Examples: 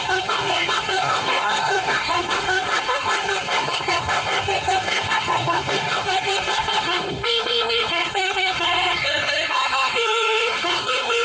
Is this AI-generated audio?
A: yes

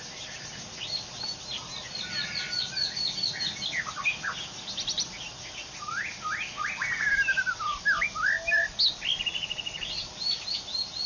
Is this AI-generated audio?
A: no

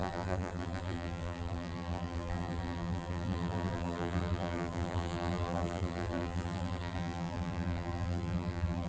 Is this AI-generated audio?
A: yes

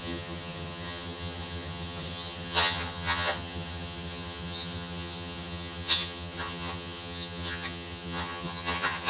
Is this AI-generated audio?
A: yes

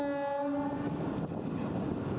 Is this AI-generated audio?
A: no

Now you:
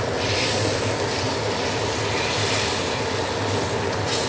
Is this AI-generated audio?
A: no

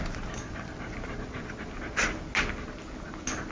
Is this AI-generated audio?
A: no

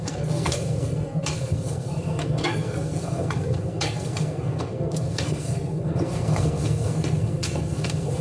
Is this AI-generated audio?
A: yes